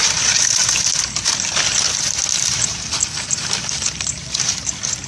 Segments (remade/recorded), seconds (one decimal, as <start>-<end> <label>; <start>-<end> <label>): 0.0-5.1 recorded